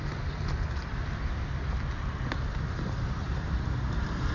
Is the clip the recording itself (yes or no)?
yes